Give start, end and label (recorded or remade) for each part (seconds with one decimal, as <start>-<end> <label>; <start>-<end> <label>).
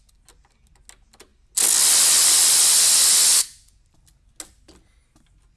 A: 0.0-5.6 recorded